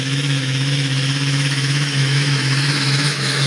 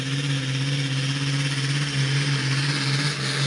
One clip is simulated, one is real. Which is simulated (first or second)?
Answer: first